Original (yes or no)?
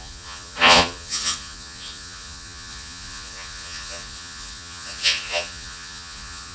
no